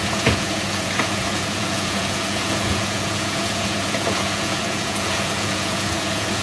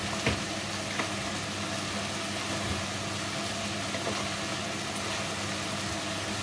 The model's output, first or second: first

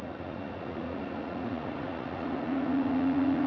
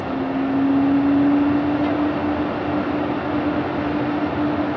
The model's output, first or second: first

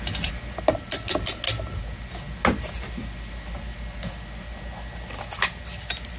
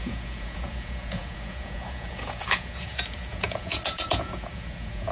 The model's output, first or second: second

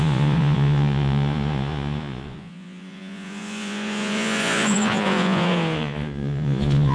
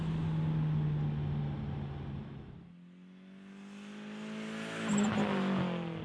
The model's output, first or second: first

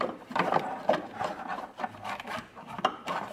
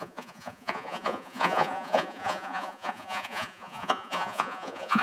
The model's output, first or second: second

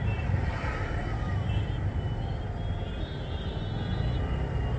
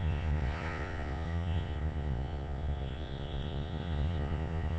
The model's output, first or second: second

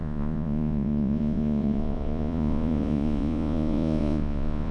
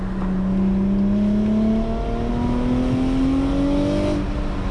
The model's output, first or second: first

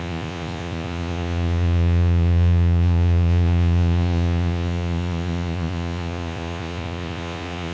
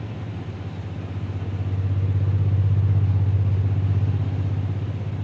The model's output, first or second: first